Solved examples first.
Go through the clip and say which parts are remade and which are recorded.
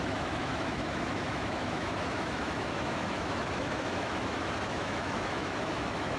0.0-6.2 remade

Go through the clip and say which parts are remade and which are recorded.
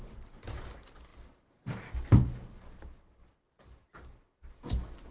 0.0-5.1 recorded